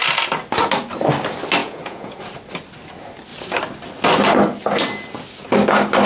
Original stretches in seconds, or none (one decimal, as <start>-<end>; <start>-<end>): 0.0-1.6; 2.2-6.1